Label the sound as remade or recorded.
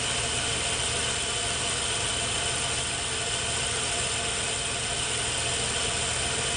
recorded